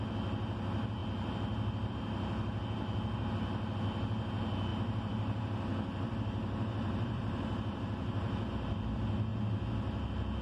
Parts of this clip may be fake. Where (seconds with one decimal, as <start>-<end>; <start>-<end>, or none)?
4.7-8.5